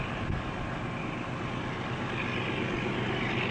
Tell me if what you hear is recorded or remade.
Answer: recorded